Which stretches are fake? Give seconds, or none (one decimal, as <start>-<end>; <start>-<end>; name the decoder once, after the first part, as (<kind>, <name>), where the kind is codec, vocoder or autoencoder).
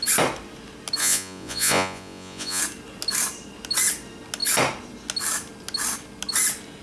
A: 1.0-2.6 (vocoder, Vocos)